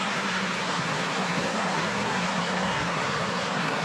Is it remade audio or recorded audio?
remade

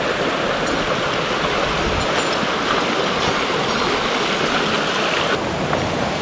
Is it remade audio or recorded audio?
recorded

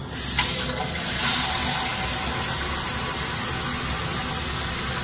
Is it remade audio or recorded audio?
recorded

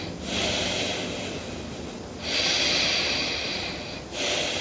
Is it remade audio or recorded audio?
recorded